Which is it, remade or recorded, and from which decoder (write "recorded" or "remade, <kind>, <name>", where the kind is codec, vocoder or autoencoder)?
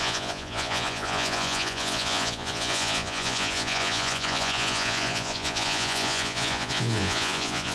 remade, vocoder, Vocos